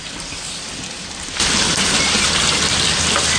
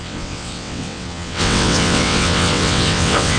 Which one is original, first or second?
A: first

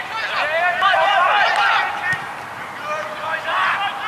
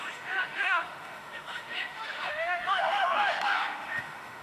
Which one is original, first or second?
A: first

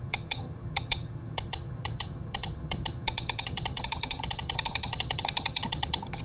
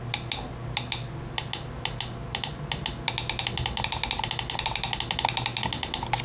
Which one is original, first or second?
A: second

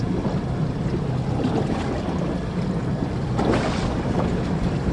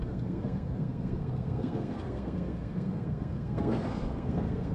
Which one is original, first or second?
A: first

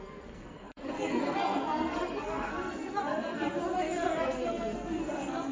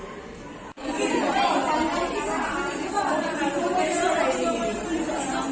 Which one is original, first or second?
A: second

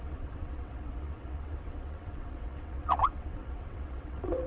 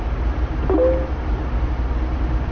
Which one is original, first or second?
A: second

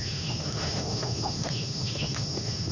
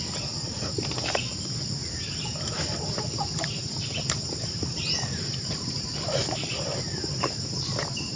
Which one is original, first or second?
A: second